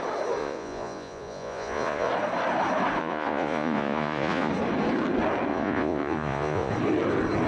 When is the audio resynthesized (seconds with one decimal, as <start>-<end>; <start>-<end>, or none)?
0.4-2.1; 3.0-4.5; 5.5-6.7